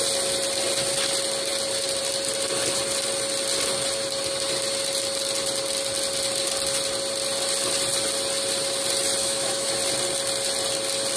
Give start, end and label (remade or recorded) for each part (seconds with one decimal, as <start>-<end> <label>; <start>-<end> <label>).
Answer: 0.0-9.2 recorded; 9.2-9.7 remade; 9.7-11.2 recorded